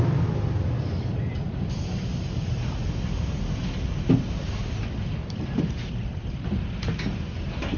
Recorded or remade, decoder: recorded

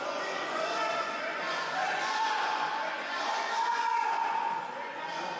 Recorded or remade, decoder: remade, vocoder, Vocos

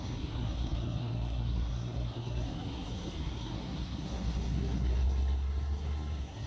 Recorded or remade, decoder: remade, codec, SNAC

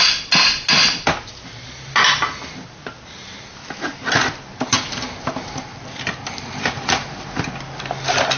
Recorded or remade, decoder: recorded